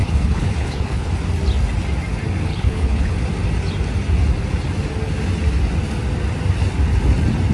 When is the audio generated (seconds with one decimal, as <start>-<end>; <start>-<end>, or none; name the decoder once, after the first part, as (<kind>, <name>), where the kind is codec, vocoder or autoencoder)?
0.0-1.1 (codec, HILCodec); 2.5-3.1